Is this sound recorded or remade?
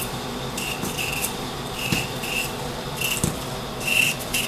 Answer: remade